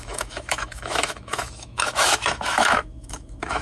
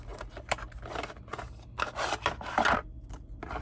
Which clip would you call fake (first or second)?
first